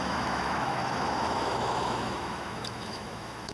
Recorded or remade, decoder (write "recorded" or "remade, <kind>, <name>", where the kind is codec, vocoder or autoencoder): remade, autoencoder, DAC-VAE